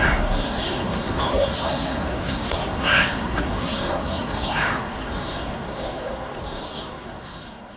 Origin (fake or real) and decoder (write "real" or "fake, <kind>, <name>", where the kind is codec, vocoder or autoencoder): fake, codec, SNAC